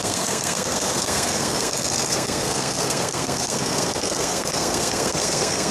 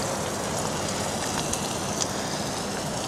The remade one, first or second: first